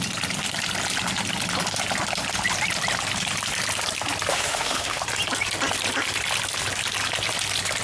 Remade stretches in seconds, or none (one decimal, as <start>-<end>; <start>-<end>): 4.3-5.0